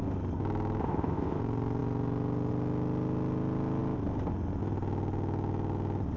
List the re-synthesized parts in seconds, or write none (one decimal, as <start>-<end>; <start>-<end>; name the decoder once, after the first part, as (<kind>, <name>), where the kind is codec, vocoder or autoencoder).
0.8-1.4 (codec, ZipCodec)